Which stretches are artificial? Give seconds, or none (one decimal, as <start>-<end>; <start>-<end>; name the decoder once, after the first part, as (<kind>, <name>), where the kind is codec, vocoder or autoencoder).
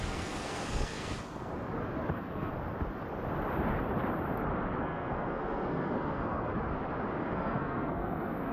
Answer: 0.0-1.5 (codec, SNAC); 2.1-2.5; 4.8-6.5; 7.2-8.5